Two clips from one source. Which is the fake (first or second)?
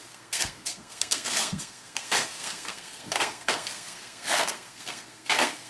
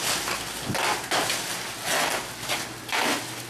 first